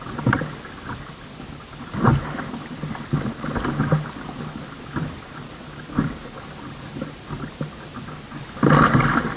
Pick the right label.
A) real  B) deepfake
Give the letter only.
A